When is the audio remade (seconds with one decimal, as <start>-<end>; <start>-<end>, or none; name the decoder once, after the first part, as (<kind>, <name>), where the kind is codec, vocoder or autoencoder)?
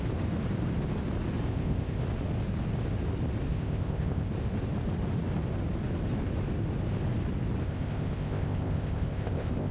1.5-2.0 (codec, ZipCodec); 3.5-4.3; 7.6-9.7